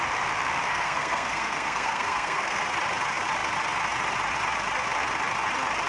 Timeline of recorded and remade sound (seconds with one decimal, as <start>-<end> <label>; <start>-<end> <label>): 0.0-0.7 recorded; 0.7-2.6 remade; 2.6-5.9 recorded